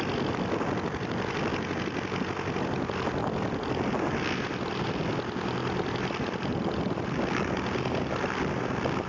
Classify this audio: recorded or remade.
recorded